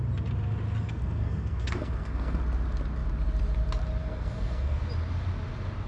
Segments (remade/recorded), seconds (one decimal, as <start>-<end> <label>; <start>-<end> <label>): 0.0-0.9 recorded; 0.9-2.4 remade; 2.4-4.0 recorded; 4.0-4.8 remade; 4.8-5.9 recorded